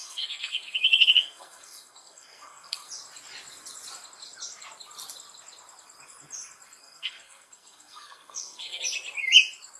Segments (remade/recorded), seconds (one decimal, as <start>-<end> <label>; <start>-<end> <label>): 0.0-2.9 remade; 2.9-6.8 recorded; 6.8-8.8 remade; 8.8-9.8 recorded